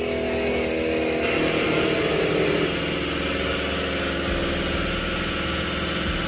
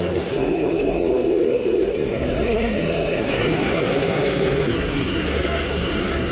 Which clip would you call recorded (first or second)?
first